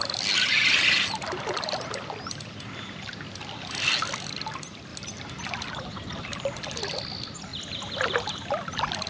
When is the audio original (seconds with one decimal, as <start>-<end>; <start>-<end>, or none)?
0.0-9.1